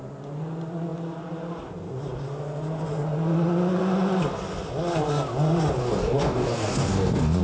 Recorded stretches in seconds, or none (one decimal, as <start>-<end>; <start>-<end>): 0.0-5.8